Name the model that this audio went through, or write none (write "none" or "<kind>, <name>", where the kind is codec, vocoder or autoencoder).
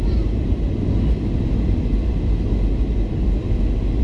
none